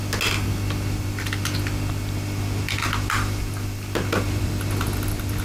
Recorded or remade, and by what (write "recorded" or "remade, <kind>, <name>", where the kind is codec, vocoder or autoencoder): recorded